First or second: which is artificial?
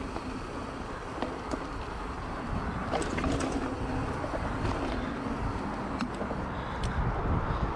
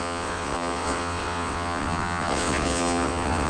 second